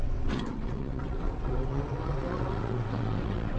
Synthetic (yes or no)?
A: yes